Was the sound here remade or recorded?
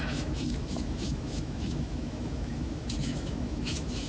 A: remade